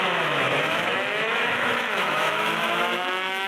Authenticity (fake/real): fake